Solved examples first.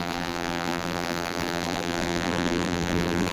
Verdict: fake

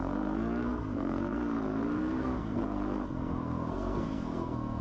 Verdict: fake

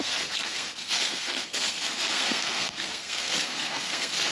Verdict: fake